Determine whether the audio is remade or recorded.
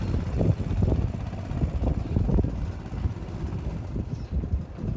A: recorded